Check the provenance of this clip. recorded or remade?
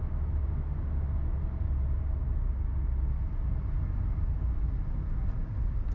recorded